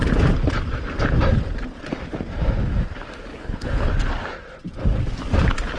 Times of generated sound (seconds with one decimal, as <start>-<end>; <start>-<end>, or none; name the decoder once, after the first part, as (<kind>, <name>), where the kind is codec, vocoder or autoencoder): 3.3-4.1 (codec, HILCodec)